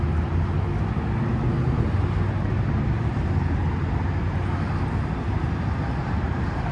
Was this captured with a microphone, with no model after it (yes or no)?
yes